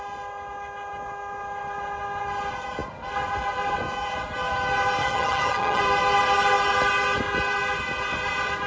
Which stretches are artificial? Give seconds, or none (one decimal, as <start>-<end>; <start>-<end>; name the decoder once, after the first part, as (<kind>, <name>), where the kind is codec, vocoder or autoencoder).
5.0-5.8 (vocoder, HiFi-GAN)